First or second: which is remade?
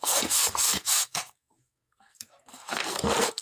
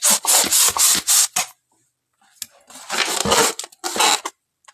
first